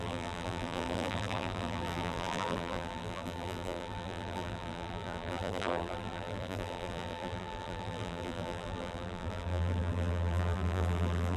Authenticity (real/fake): fake